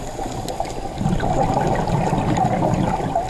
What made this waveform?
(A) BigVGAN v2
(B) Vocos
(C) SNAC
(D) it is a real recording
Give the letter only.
D